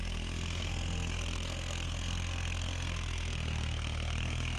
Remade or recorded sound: remade